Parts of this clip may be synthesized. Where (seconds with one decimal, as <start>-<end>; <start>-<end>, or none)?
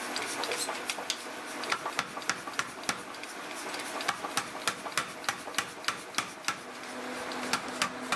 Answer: none